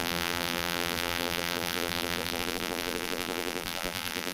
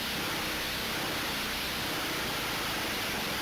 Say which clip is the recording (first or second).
second